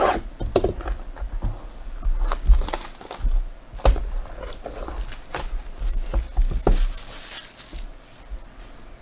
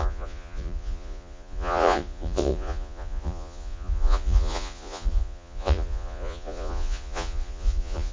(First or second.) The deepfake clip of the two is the second